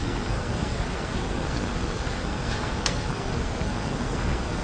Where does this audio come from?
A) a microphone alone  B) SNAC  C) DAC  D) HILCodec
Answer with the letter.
B